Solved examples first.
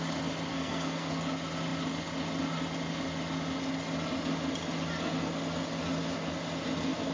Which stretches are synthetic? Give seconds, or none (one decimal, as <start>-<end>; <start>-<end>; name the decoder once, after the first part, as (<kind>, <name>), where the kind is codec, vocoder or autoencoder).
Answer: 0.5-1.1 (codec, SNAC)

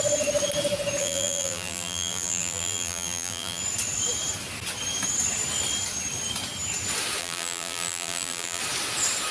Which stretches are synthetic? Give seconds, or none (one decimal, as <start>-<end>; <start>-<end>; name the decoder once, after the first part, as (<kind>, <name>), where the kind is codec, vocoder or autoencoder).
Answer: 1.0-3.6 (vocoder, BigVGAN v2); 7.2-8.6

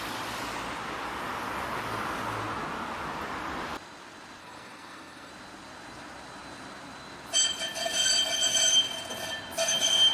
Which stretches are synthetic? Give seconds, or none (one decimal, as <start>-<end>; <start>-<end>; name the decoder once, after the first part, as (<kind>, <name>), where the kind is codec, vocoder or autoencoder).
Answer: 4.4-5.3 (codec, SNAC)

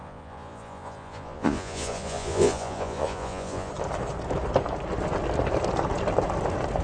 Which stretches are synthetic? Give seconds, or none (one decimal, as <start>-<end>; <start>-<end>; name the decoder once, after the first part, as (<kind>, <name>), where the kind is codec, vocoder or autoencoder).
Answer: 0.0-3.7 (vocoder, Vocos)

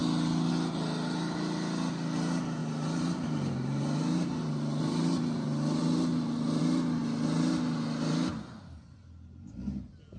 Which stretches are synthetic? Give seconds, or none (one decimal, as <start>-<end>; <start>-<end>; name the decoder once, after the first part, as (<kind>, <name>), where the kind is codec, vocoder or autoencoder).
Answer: 2.6-6.6 (vocoder, BigVGAN v2)